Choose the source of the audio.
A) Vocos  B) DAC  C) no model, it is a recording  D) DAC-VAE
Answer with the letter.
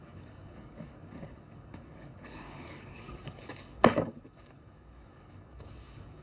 B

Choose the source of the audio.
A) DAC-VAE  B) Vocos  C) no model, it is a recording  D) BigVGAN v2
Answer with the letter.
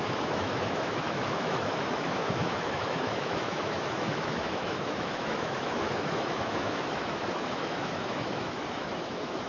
A